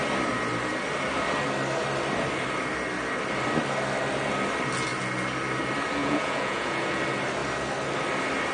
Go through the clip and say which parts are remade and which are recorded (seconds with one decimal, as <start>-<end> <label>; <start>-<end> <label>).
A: 0.0-6.0 recorded; 6.0-7.0 remade; 7.0-8.5 recorded